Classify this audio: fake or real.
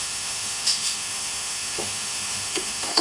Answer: fake